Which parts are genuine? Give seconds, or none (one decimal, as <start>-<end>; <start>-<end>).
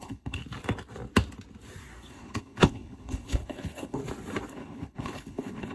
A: 0.4-2.1; 4.0-4.5